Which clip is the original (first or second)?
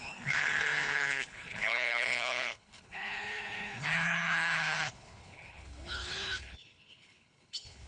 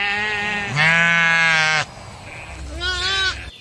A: second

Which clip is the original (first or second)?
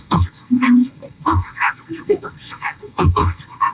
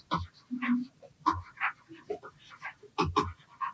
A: second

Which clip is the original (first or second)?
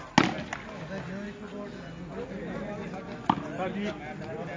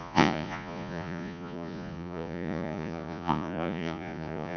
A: first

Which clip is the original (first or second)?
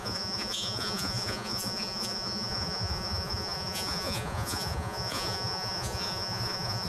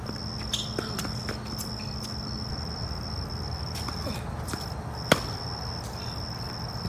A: second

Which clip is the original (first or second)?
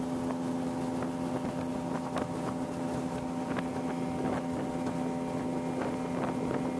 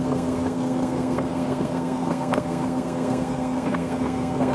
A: first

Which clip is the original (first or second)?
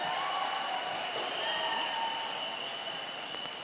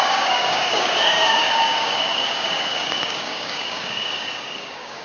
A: first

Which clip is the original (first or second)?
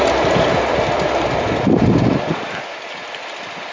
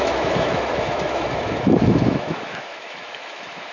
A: first